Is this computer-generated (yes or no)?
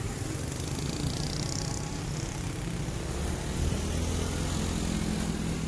no